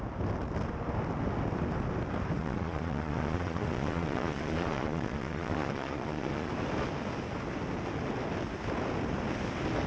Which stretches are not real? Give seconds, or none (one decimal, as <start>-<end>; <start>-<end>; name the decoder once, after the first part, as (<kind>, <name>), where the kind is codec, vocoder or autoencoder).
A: 2.4-6.5 (vocoder, Vocos)